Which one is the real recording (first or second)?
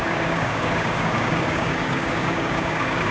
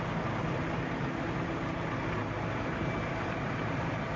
second